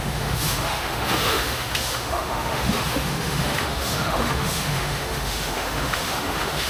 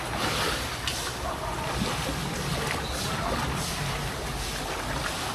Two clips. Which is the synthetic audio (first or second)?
first